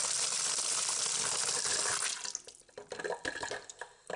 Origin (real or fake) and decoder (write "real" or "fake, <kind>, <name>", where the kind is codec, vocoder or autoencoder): real